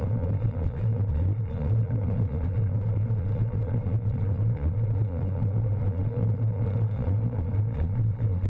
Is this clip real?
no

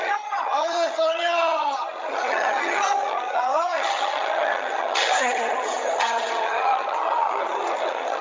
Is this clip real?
no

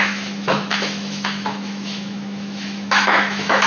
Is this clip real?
no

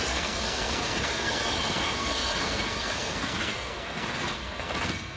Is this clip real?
no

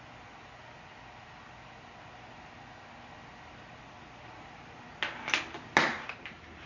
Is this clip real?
yes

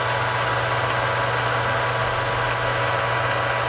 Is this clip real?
yes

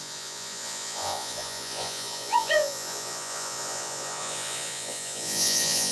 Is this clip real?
no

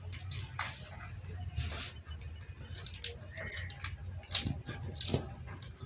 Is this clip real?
yes